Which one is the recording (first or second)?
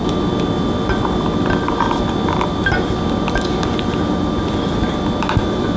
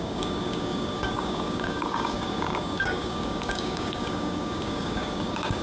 first